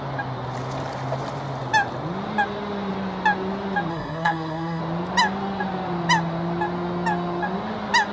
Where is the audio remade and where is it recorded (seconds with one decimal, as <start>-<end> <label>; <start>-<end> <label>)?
0.0-3.9 recorded; 3.9-4.8 remade; 4.8-8.1 recorded